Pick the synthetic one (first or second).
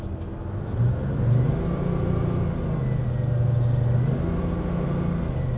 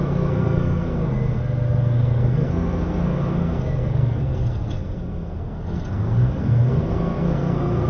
second